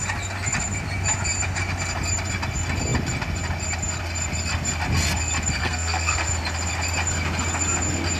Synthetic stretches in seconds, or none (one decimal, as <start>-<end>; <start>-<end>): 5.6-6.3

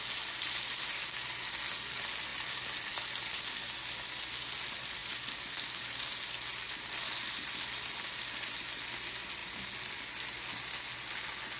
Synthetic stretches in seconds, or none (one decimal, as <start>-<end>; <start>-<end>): none

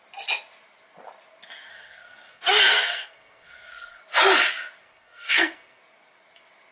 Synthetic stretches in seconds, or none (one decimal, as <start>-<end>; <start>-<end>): 1.7-4.0; 4.8-5.8

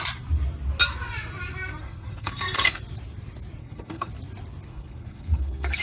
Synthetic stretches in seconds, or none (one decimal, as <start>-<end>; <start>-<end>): 1.8-2.8; 3.6-4.1; 4.7-5.8

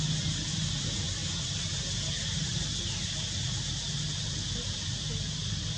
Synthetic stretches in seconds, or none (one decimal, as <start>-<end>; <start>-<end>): none

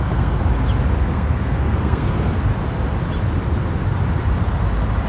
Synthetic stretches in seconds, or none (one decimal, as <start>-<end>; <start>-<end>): 0.0-0.4; 1.0-2.5